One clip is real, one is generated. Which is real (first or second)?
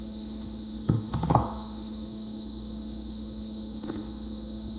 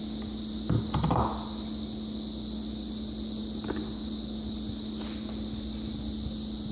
second